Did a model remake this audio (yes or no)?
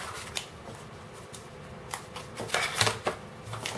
no